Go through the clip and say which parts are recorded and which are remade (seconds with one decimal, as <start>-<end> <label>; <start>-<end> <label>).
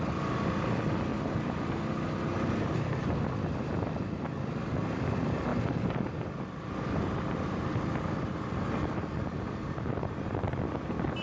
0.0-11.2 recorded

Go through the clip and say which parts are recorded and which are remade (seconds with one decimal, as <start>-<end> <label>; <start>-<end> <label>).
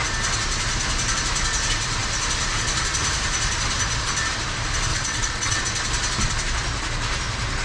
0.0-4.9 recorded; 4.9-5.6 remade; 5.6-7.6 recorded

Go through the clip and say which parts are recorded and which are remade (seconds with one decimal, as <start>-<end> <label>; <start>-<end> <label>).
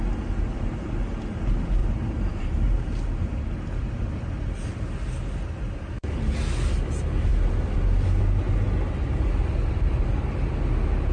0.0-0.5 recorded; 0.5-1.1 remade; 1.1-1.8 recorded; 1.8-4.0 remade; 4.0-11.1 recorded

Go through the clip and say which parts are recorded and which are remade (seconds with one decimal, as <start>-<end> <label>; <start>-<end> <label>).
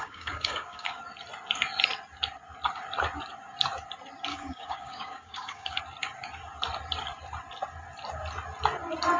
0.0-1.0 remade; 1.0-4.3 recorded; 4.3-5.8 remade; 5.8-9.2 recorded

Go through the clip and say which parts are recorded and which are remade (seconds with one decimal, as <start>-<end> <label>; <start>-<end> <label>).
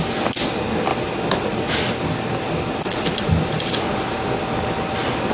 0.0-5.3 recorded